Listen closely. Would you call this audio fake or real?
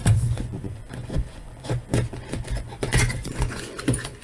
fake